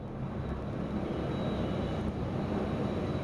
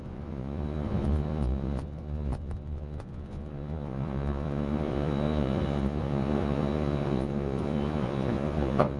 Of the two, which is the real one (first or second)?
first